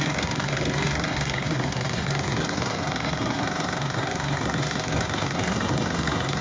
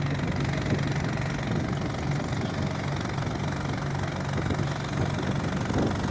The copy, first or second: first